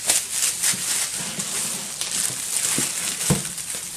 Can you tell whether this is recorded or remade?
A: recorded